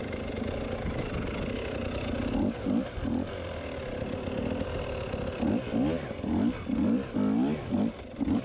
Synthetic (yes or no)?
no